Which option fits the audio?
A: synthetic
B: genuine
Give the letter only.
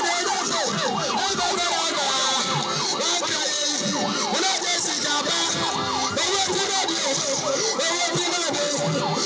B